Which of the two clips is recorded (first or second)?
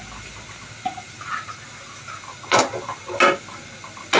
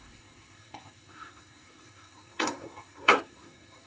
first